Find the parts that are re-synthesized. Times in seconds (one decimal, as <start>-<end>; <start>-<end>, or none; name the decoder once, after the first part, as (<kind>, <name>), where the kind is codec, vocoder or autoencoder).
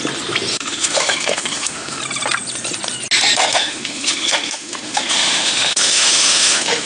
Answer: 0.5-2.0 (autoencoder, DAC-VAE); 3.5-6.9